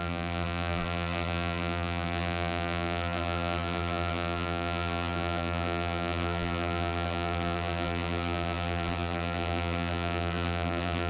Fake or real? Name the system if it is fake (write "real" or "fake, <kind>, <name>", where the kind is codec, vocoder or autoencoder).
fake, vocoder, BigVGAN v2